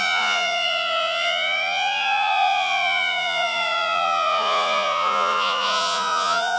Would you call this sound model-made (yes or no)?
yes